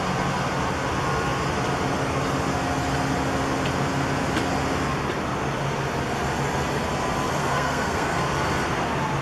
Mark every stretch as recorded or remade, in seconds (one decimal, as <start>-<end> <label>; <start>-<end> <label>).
0.0-7.4 recorded; 7.4-8.2 remade; 8.2-9.2 recorded